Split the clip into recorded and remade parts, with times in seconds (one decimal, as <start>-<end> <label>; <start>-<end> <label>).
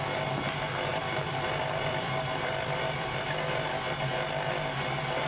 0.0-0.9 recorded; 0.9-4.1 remade; 4.1-5.3 recorded